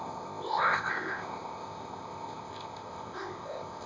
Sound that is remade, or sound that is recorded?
remade